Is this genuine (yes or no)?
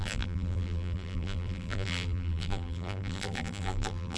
no